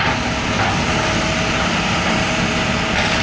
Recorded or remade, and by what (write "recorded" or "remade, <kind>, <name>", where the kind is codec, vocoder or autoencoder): recorded